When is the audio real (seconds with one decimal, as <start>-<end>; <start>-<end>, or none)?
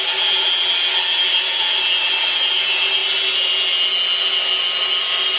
0.0-5.4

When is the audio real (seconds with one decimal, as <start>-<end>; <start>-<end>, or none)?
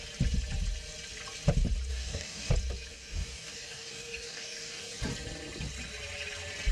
0.0-1.9; 2.5-2.9; 5.0-6.7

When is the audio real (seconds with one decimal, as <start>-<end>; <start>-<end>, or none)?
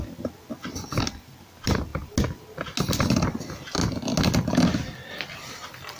0.0-6.0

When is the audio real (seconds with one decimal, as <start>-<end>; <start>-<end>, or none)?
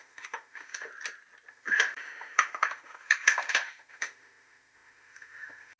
0.9-1.5